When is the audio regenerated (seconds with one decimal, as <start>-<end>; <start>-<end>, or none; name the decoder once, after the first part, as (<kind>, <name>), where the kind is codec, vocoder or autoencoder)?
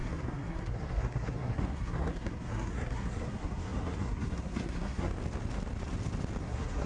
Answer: 0.0-5.1 (codec, SNAC); 6.4-6.9